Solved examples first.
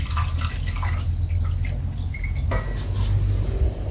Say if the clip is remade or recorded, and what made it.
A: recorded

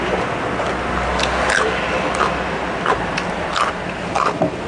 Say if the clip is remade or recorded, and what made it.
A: recorded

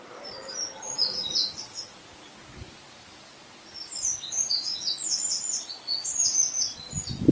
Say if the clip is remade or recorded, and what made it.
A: recorded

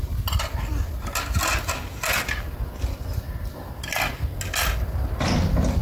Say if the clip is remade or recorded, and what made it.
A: recorded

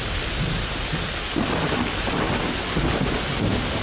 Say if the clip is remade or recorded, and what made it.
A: recorded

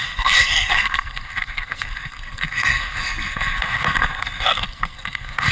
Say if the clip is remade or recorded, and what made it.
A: remade, codec, SNAC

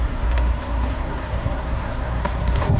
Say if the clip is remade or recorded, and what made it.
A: remade, codec, SNAC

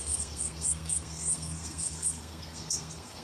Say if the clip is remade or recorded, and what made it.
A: remade, codec, SNAC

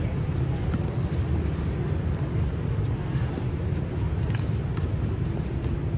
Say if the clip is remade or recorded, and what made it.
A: recorded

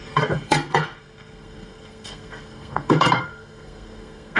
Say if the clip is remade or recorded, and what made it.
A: remade, codec, SNAC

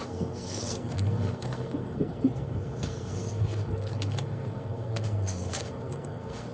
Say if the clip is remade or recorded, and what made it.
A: remade, codec, SNAC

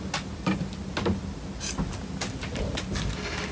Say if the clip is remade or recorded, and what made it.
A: recorded